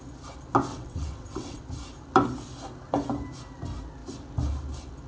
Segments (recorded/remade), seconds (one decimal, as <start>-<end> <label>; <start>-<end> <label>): 0.0-0.7 recorded; 0.7-1.6 remade; 1.6-5.1 recorded